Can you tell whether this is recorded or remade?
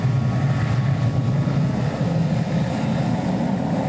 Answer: recorded